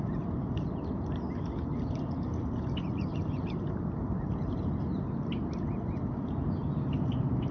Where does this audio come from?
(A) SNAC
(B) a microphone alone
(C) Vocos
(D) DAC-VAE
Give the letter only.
B